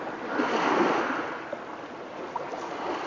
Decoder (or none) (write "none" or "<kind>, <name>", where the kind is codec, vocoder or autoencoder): none